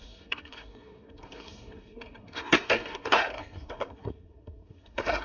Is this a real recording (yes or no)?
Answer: no